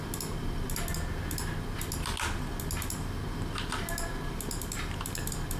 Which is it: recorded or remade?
recorded